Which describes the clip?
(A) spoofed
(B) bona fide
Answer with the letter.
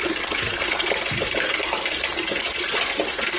B